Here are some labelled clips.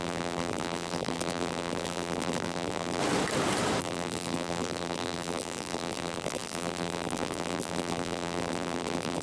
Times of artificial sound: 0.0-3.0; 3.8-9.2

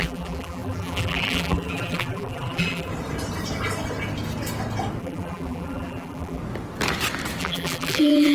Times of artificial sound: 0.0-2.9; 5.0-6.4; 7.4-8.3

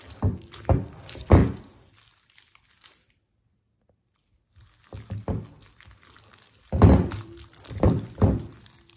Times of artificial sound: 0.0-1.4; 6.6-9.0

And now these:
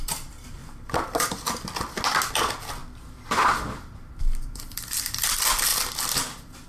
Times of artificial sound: 0.0-0.6; 2.3-2.8; 3.7-5.7

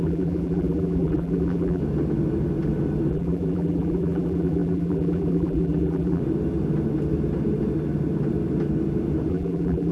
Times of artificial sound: 0.0-1.8; 3.1-6.2; 9.3-9.9

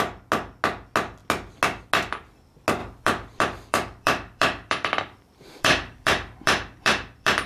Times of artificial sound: 2.8-7.5